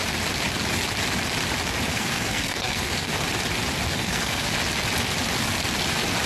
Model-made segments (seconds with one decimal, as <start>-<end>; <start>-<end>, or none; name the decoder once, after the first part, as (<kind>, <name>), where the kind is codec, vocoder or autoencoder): 1.9-3.1 (codec, SNAC); 3.9-4.5